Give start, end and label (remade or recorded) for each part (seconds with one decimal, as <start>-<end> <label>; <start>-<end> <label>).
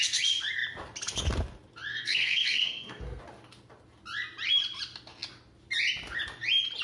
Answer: 0.0-1.9 recorded; 1.9-3.2 remade; 3.2-6.8 recorded